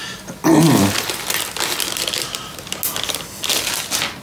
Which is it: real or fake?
real